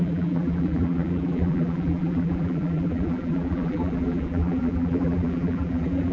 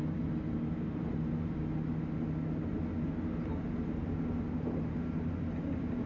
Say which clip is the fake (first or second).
first